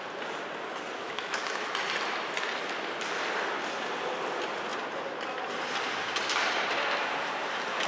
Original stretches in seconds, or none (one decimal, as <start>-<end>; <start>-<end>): 0.0-1.0; 1.7-7.9